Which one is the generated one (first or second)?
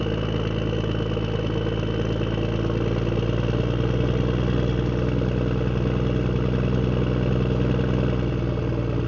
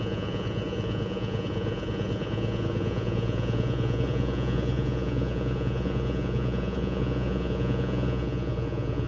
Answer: second